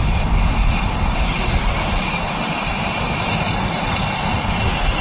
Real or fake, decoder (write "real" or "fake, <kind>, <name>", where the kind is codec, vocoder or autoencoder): real